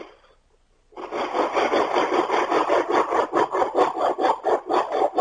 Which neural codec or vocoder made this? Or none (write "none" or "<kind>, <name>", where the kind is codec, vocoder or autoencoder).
none